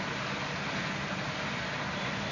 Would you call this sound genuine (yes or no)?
yes